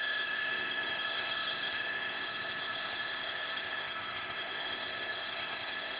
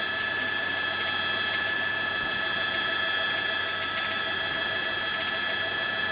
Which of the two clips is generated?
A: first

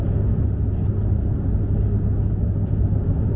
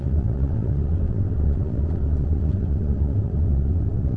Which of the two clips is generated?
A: second